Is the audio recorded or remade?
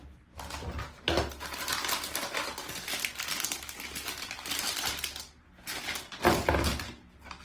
recorded